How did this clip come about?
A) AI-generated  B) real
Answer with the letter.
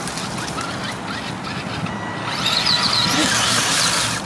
B